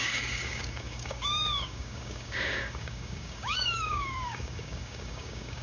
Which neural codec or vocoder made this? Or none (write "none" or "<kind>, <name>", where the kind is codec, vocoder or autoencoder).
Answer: codec, DAC